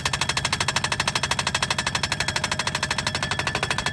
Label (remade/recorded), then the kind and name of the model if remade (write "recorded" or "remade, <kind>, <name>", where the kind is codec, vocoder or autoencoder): recorded